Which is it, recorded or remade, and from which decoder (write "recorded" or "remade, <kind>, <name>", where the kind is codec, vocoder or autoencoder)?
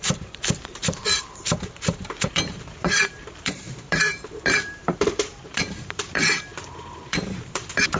remade, vocoder, BigVGAN v2